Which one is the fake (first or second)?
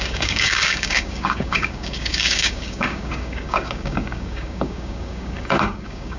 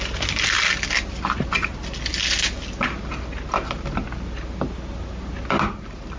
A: first